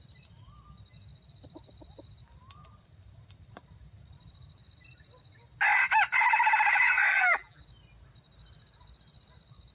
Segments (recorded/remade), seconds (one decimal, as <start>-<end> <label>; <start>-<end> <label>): 0.0-7.1 recorded; 7.1-7.6 remade; 7.6-9.7 recorded